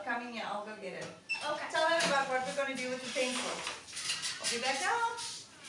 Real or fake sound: real